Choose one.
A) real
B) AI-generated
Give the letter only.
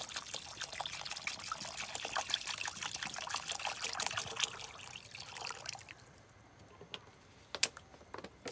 A